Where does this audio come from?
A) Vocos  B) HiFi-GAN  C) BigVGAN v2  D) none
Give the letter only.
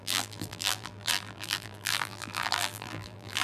C